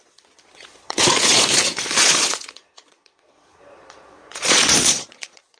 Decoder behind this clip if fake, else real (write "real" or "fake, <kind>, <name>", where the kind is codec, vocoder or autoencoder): fake, vocoder, Vocos